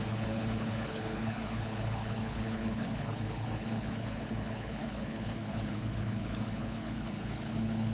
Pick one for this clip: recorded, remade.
remade